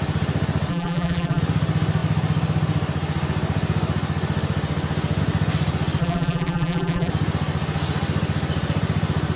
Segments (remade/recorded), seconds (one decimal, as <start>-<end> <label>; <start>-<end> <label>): 0.0-0.7 recorded; 0.7-1.4 remade; 1.4-6.0 recorded; 6.0-7.1 remade; 7.1-9.4 recorded